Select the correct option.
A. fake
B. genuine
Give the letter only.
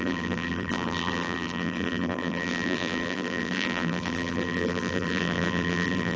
A